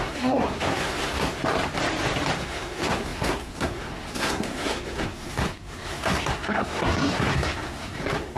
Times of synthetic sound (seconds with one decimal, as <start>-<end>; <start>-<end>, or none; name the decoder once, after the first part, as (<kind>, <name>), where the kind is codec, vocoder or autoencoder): 0.0-1.4 (codec, SNAC); 2.4-8.4